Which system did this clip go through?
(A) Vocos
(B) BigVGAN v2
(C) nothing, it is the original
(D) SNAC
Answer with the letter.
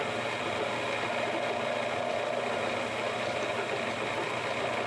C